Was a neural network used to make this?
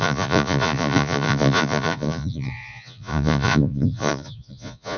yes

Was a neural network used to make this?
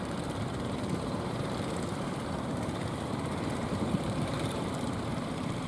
yes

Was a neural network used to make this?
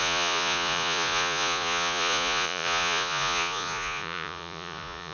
yes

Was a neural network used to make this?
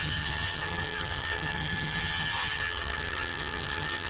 yes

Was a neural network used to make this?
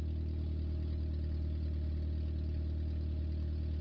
no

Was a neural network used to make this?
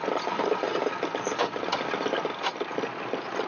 no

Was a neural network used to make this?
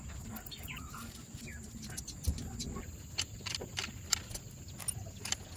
no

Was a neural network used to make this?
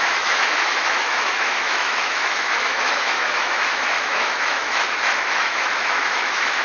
yes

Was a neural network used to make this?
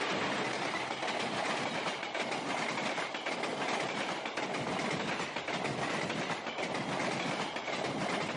no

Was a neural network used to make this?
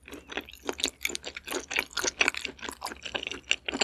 no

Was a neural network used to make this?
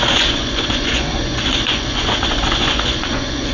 yes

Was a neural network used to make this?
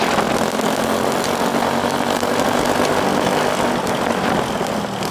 no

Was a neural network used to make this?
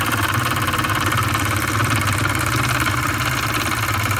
yes